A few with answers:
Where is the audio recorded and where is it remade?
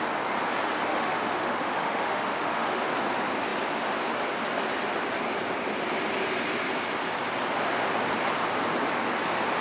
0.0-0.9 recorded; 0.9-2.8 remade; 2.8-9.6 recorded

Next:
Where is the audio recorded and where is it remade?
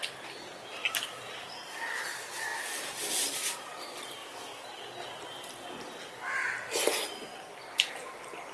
0.0-8.5 recorded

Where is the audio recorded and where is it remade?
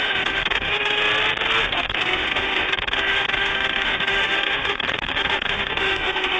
0.0-1.0 remade; 1.0-1.6 recorded; 1.6-6.4 remade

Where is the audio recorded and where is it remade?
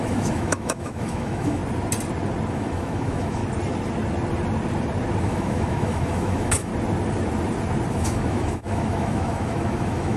0.0-1.6 remade; 1.6-2.5 recorded; 2.5-3.4 remade; 3.4-5.2 recorded; 5.2-6.7 remade; 6.7-7.9 recorded; 7.9-10.2 remade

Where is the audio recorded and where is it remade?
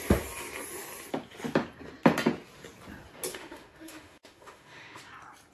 0.0-3.3 recorded; 3.3-5.0 remade; 5.0-5.5 recorded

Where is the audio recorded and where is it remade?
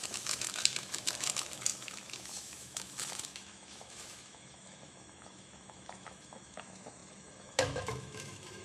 0.0-8.6 remade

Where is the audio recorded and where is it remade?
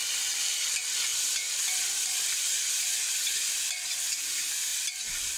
0.0-5.4 recorded